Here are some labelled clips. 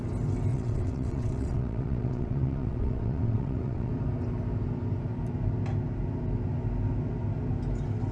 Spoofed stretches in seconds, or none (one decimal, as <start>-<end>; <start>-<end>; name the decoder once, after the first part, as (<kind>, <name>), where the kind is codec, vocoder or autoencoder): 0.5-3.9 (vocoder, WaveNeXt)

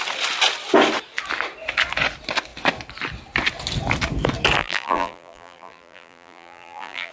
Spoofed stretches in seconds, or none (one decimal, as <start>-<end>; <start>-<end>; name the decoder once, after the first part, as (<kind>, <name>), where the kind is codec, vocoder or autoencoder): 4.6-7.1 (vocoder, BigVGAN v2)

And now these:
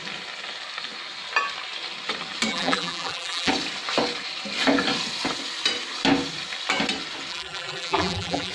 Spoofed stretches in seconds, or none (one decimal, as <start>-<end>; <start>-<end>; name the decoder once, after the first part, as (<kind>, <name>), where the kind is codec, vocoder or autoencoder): 2.5-3.5 (vocoder, BigVGAN v2); 7.3-8.5